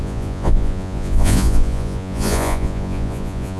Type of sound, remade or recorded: remade